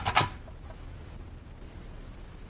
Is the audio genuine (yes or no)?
yes